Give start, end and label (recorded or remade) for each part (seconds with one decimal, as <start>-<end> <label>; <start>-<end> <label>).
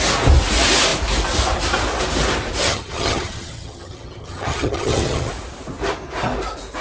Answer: 0.0-2.6 recorded; 2.6-5.3 remade; 5.3-6.8 recorded